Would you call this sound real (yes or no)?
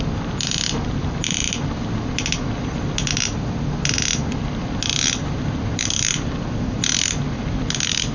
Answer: yes